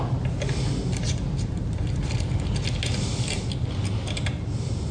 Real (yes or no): yes